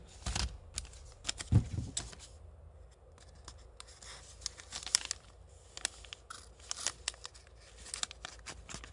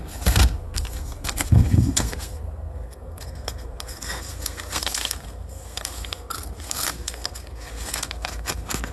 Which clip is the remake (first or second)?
second